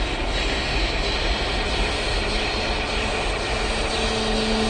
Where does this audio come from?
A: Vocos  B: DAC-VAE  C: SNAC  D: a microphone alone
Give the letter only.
D